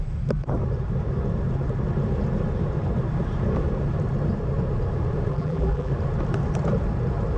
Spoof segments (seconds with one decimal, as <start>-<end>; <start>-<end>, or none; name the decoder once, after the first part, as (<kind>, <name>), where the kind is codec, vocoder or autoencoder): 5.3-5.9 (vocoder, BigVGAN v2)